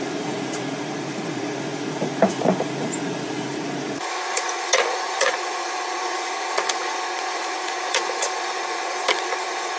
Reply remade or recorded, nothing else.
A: remade